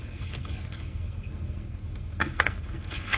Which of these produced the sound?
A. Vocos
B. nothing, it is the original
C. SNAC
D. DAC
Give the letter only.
C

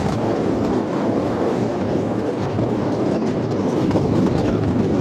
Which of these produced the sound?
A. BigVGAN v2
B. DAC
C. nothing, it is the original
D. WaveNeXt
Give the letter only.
B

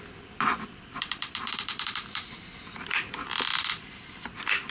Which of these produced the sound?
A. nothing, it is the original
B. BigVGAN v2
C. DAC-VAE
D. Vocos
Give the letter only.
B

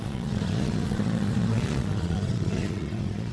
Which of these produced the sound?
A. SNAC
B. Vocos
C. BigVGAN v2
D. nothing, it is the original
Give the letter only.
B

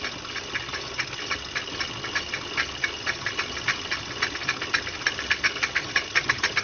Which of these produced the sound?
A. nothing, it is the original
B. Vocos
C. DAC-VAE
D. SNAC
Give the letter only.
A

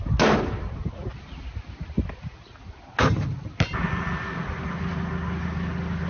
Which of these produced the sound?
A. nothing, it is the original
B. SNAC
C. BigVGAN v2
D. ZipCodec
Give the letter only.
A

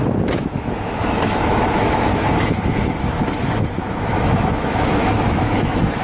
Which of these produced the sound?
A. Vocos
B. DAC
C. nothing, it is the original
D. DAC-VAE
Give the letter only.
D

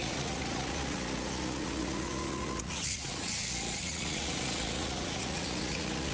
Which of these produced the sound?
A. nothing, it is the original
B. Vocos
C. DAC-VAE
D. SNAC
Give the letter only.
B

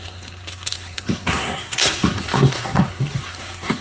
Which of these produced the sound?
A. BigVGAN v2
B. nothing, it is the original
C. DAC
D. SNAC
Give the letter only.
D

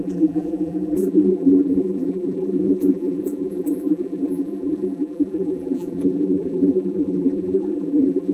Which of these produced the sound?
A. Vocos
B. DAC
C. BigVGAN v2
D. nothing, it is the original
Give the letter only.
C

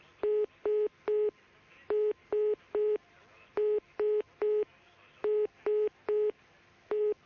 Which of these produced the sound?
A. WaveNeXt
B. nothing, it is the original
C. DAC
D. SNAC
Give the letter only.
B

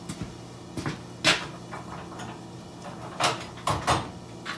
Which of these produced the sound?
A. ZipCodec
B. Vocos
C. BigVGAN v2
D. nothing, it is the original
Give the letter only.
D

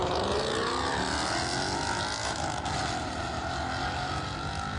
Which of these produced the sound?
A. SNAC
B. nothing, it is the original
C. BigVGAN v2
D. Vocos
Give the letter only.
B